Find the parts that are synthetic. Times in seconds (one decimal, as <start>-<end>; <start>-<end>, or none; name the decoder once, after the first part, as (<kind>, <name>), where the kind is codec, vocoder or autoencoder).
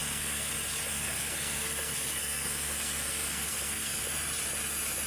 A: 0.0-0.5 (codec, SNAC); 0.9-4.0